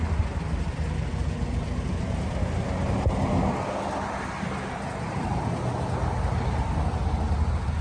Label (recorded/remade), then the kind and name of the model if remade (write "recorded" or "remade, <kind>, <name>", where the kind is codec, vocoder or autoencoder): recorded